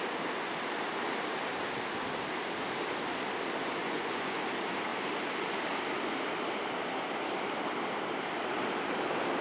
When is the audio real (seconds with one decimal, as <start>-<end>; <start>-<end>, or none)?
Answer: 0.0-3.8; 4.4-9.4